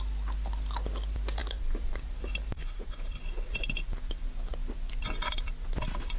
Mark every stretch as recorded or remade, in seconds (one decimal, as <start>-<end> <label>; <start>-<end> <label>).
0.0-1.4 recorded; 1.4-3.2 remade; 3.2-6.2 recorded